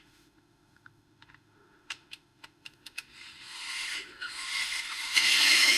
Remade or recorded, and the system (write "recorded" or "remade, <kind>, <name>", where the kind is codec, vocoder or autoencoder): remade, autoencoder, DAC-VAE